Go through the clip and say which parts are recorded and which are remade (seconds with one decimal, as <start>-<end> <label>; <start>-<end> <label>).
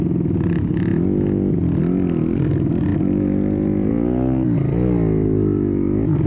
0.0-2.9 recorded; 2.9-3.9 remade; 3.9-6.3 recorded